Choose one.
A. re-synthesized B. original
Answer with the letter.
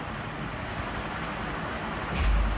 B